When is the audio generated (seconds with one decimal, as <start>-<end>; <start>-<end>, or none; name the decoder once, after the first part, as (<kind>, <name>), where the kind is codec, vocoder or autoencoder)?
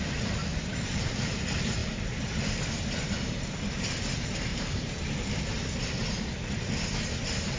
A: 0.4-1.3 (vocoder, BigVGAN v2); 1.8-2.4; 4.5-5.4